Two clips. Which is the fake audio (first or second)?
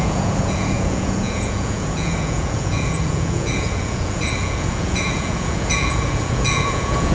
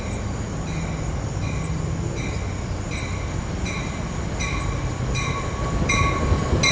first